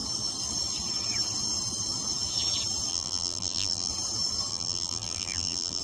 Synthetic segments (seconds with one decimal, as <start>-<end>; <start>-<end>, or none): 2.9-3.9; 4.5-5.8